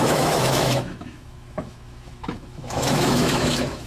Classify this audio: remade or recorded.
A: remade